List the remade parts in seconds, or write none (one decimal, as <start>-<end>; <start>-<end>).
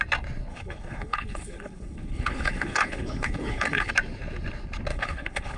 0.5-3.9; 4.9-5.6